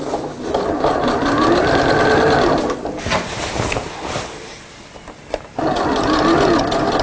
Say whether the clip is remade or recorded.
recorded